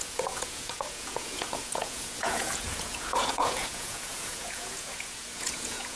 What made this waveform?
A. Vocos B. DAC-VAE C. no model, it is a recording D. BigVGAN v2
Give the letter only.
A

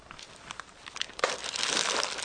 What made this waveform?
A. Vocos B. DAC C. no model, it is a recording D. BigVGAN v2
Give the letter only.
C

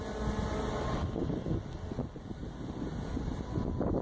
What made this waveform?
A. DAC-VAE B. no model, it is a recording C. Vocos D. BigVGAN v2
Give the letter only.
B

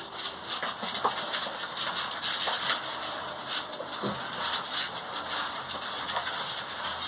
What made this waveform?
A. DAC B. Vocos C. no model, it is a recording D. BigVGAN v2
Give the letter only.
C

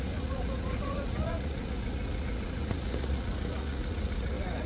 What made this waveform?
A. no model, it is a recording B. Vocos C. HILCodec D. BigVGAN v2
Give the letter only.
B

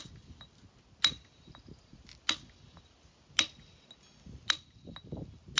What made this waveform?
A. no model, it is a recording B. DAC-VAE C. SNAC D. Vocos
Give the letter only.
A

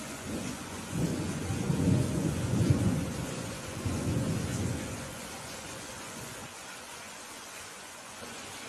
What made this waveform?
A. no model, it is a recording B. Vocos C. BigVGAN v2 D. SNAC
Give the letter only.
B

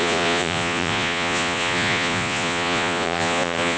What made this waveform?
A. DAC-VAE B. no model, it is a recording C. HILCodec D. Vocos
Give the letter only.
D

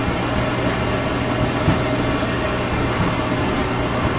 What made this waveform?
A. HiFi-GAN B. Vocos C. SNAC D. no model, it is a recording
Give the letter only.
D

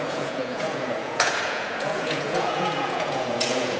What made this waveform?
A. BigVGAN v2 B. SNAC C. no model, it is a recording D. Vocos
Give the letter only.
D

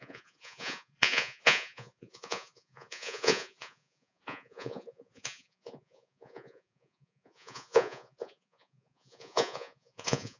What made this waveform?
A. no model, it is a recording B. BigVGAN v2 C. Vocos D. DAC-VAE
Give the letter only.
C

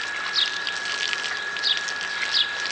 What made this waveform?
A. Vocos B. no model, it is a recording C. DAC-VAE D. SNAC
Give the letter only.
B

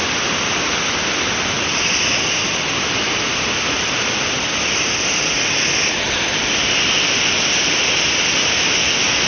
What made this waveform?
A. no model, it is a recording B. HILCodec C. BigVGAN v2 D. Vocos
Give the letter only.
A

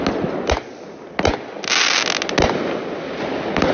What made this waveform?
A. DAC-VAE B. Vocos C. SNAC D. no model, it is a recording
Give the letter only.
D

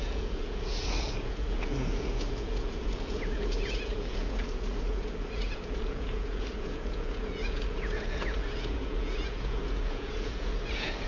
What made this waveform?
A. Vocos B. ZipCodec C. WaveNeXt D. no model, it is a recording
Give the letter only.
A